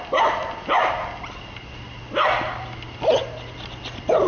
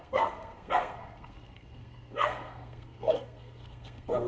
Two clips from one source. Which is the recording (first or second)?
first